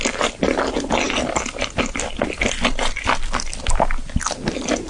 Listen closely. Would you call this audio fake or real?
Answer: real